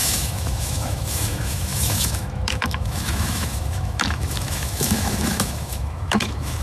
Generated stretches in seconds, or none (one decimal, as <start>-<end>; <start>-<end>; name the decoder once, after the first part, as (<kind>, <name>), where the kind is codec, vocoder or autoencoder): 0.0-6.6 (autoencoder, DAC-VAE)